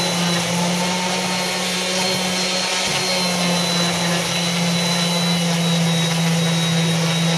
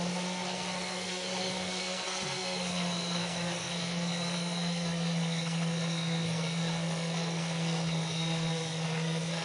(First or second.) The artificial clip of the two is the second